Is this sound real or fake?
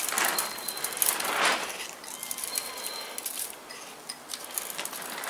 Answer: real